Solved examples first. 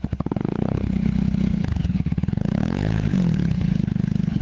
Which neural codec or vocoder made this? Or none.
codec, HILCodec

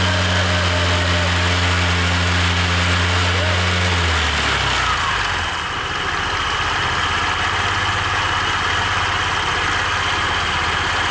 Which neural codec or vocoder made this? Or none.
none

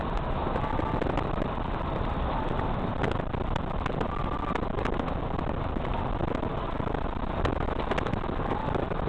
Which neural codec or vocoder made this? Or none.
none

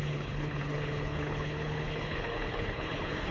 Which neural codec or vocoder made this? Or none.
codec, HILCodec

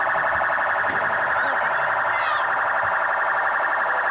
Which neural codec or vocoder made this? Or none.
none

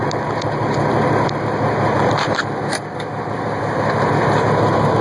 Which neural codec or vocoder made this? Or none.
none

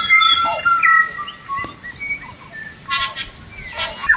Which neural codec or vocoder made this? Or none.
none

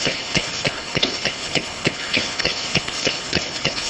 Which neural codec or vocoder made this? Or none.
codec, HILCodec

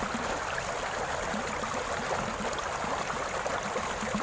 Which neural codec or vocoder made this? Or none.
none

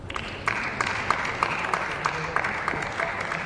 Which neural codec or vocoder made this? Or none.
none